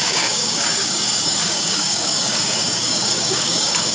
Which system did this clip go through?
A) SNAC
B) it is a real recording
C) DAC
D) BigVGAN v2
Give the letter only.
C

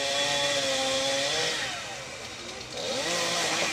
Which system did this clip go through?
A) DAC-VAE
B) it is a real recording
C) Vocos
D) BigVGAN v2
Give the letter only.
B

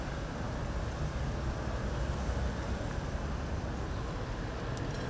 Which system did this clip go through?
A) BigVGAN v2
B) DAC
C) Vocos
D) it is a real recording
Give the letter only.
D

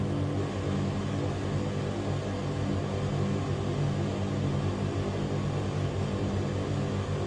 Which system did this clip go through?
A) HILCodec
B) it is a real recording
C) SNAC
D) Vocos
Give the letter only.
B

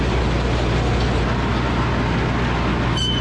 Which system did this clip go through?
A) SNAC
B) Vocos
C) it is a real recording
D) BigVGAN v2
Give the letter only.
C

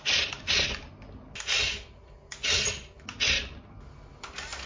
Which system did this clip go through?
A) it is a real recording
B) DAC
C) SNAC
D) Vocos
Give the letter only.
A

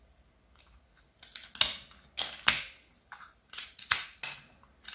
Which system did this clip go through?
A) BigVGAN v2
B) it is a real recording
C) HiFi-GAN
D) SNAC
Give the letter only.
B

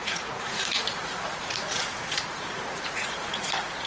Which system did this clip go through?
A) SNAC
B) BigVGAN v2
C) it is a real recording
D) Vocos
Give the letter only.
D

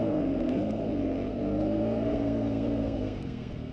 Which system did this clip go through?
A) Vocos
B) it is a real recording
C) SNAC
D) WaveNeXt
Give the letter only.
C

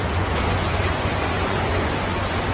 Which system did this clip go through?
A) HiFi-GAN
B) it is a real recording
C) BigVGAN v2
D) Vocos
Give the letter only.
D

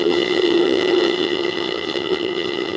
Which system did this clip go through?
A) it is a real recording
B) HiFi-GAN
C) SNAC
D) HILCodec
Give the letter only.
B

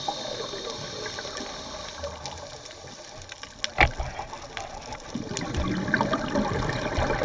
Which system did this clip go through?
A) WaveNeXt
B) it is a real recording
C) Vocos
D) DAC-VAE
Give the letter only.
B